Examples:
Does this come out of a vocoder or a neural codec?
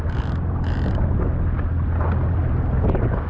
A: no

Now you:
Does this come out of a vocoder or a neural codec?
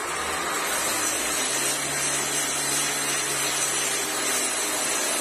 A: no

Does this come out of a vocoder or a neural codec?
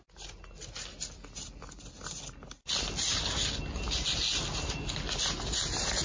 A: no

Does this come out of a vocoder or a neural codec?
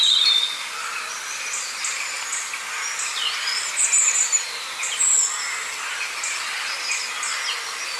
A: no